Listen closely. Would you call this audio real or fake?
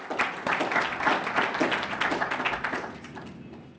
real